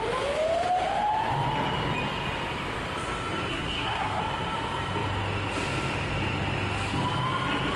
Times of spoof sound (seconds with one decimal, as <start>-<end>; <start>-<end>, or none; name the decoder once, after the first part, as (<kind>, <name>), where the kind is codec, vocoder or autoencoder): 3.5-4.2 (codec, SNAC)